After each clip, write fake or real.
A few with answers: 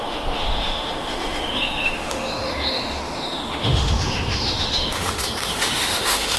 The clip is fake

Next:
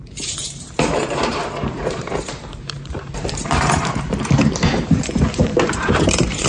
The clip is fake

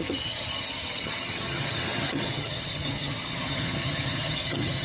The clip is fake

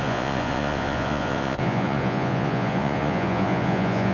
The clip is fake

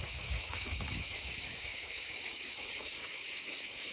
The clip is fake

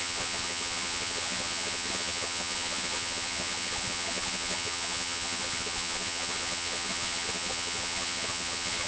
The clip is fake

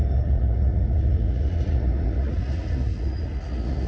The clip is fake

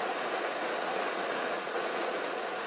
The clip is fake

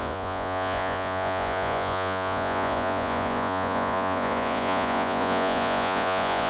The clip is fake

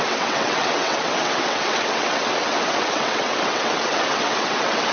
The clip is fake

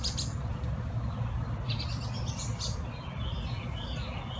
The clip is fake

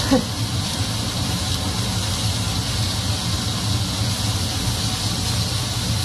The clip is real